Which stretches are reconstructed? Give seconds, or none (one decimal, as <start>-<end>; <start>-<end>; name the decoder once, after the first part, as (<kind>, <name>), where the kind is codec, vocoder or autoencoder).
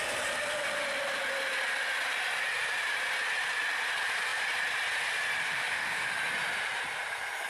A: 5.4-6.2 (autoencoder, DAC-VAE)